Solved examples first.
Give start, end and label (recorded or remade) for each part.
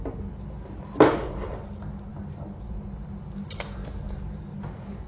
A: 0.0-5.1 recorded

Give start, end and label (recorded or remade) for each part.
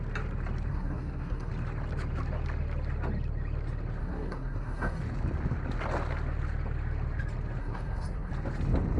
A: 0.0-0.7 recorded; 0.7-1.5 remade; 1.5-4.0 recorded; 4.0-5.0 remade; 5.0-7.6 recorded; 7.6-8.3 remade; 8.3-9.0 recorded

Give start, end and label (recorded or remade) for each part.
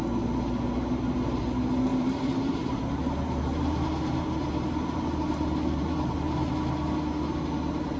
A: 0.0-1.9 recorded; 1.9-6.5 remade; 6.5-8.0 recorded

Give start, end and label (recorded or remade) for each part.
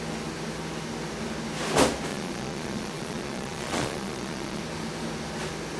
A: 0.0-2.1 recorded; 2.1-4.6 remade; 4.6-5.8 recorded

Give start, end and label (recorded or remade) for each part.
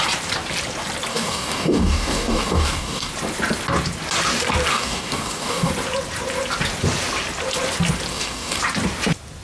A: 0.0-1.1 recorded; 1.1-3.1 remade; 3.1-4.7 recorded; 4.7-5.7 remade; 5.7-8.1 recorded; 8.1-8.6 remade; 8.6-9.4 recorded